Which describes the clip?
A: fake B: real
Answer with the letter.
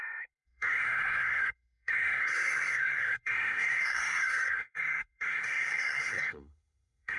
A